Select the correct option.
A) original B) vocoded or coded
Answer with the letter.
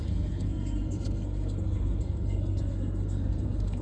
B